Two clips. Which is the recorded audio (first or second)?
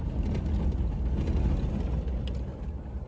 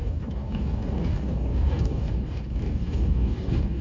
first